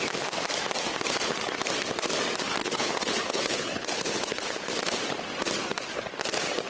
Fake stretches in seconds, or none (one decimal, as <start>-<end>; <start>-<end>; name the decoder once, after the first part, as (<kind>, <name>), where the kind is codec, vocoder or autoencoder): 2.6-4.7 (codec, HILCodec)